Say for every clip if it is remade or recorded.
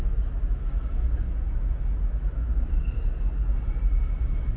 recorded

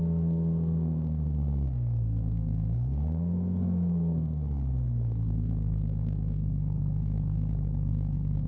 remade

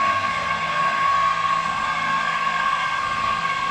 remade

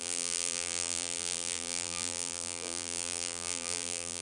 remade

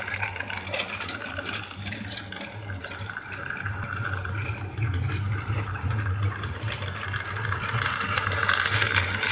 recorded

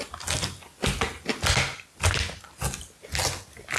recorded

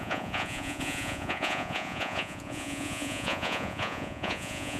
remade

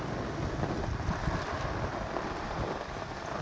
recorded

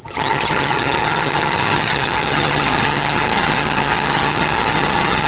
remade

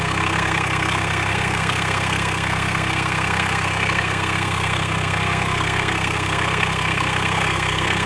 remade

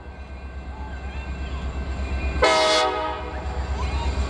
recorded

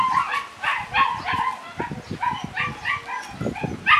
recorded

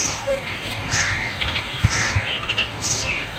remade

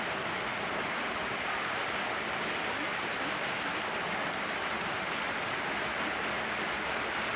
recorded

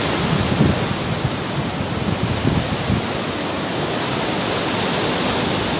recorded